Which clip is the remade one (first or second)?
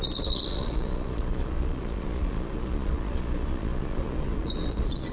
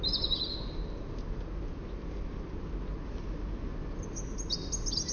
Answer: first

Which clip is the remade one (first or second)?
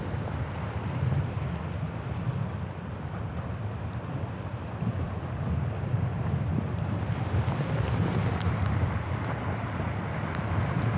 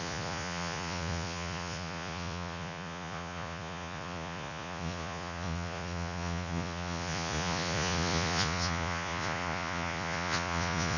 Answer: second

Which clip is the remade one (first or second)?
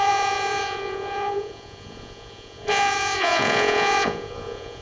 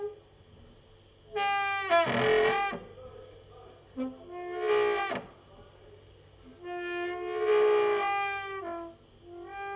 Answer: first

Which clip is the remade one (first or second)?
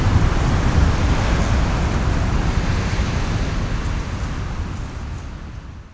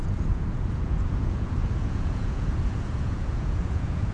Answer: second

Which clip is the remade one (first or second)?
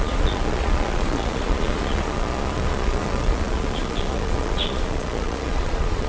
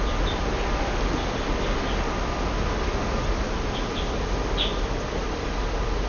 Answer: first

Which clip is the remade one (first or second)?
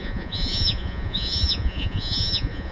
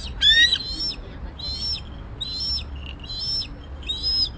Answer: first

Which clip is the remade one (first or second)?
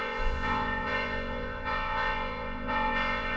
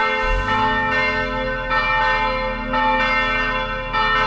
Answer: first